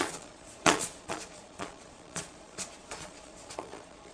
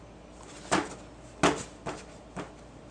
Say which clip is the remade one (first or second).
first